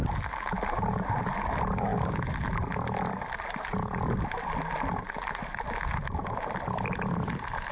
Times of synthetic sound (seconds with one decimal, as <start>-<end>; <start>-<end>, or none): none